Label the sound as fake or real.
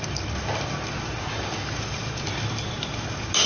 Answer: real